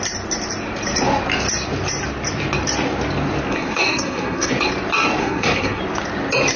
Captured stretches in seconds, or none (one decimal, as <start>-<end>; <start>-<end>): 0.0-3.5; 4.5-5.2; 5.8-6.6